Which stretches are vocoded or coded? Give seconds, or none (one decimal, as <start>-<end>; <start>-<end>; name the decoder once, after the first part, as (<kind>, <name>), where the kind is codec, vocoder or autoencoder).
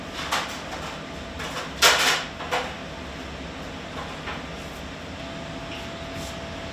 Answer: none